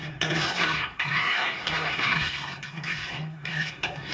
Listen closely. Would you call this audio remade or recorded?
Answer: remade